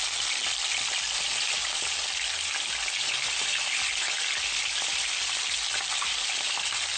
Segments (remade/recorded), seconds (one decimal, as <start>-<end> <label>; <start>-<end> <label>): 0.0-7.0 recorded